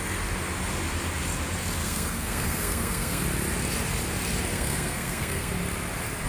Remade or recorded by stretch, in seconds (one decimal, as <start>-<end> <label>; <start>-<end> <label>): 0.0-1.8 recorded; 1.8-3.2 remade; 3.2-4.5 recorded; 4.5-5.5 remade; 5.5-6.3 recorded